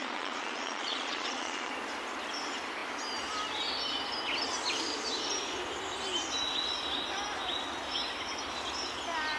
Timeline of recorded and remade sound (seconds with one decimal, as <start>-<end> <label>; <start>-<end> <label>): 0.0-1.7 remade; 1.7-9.4 recorded